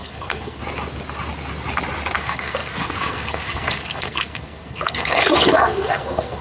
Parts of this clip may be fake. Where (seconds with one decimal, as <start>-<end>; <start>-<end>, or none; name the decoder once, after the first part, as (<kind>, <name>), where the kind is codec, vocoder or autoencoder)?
0.0-0.6 (codec, SNAC); 2.2-6.4